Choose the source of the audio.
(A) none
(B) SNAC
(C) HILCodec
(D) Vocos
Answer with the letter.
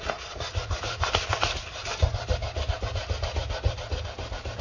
A